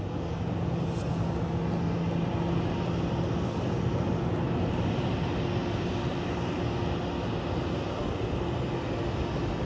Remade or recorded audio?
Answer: recorded